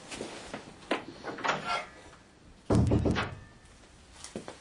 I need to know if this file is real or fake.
real